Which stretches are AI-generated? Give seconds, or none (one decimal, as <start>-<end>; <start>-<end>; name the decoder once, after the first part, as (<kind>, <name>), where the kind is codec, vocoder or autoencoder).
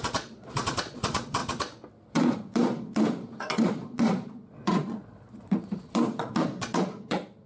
0.0-1.4 (vocoder, Vocos); 2.1-7.5